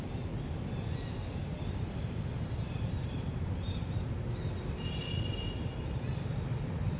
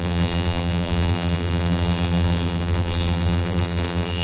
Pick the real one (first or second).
first